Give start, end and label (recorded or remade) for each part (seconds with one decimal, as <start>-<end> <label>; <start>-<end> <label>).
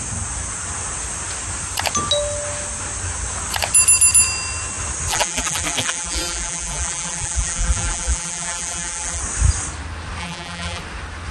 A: 0.0-5.1 recorded; 5.1-9.2 remade; 9.2-10.2 recorded; 10.2-10.8 remade; 10.8-11.3 recorded